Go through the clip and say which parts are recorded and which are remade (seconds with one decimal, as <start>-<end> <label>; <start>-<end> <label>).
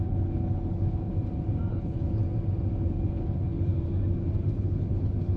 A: 0.0-1.1 remade; 1.1-1.7 recorded; 1.7-2.2 remade; 2.2-2.8 recorded; 2.8-3.7 remade; 3.7-4.6 recorded; 4.6-5.4 remade